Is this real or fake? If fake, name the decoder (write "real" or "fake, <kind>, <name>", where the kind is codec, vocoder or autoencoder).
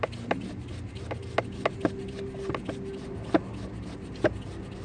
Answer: real